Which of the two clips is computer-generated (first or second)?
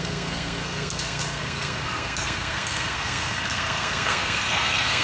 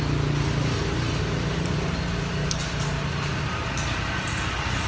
first